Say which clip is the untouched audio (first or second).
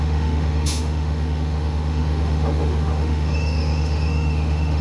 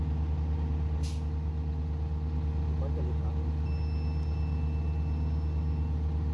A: second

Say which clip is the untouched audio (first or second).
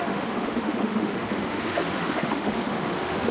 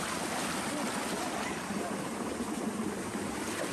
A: second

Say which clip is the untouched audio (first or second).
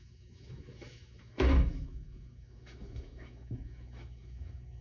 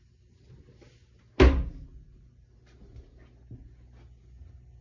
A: second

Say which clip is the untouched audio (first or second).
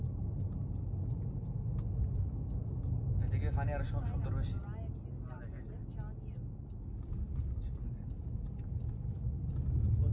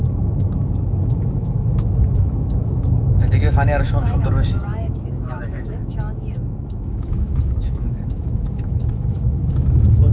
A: first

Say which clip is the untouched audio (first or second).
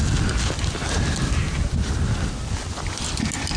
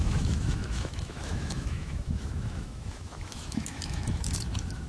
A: first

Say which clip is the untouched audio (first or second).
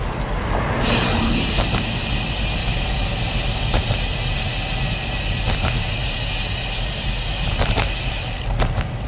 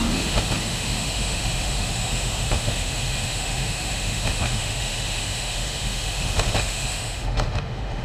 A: first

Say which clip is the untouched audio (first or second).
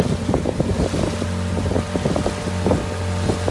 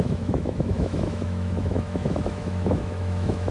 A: first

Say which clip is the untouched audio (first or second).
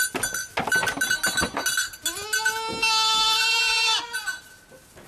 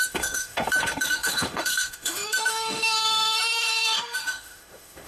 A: first